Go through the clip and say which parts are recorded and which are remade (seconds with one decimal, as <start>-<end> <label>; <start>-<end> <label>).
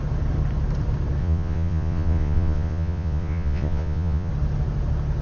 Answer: 0.0-1.2 recorded; 1.2-4.3 remade; 4.3-5.2 recorded